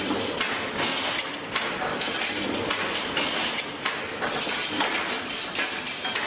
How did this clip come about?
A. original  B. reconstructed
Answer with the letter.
A